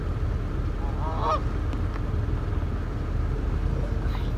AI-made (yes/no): no